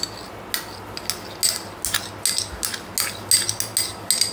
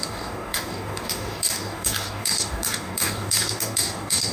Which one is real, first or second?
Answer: first